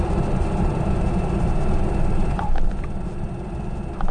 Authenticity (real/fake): real